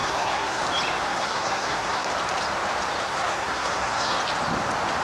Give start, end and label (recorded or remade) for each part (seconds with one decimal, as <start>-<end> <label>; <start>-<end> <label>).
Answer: 0.0-0.6 remade; 0.6-1.1 recorded; 1.1-2.1 remade; 2.1-3.0 recorded; 3.0-4.2 remade; 4.2-5.0 recorded

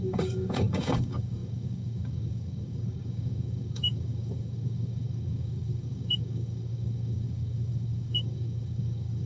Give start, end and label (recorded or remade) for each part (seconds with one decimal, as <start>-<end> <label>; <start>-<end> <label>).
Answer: 0.0-9.3 remade

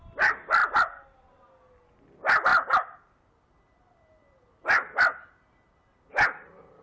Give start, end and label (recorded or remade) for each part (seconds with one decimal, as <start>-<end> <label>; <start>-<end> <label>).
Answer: 0.0-6.8 recorded

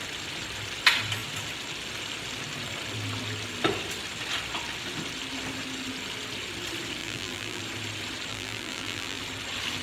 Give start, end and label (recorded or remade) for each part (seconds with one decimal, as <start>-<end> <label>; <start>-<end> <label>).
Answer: 0.0-7.0 recorded; 7.0-7.6 remade; 7.6-8.3 recorded; 8.3-9.2 remade; 9.2-9.8 recorded

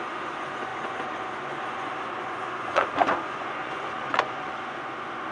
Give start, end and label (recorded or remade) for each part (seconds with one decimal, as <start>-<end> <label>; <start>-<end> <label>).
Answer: 0.0-5.3 remade

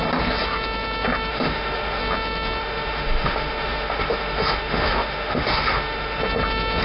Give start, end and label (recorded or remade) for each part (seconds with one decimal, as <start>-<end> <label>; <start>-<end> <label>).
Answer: 0.0-1.3 recorded; 1.3-2.0 remade; 2.0-2.6 recorded; 2.6-6.2 remade; 6.2-6.8 recorded